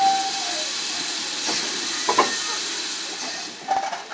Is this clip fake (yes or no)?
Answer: no